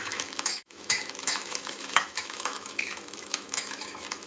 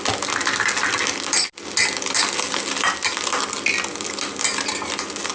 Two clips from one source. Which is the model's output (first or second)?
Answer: first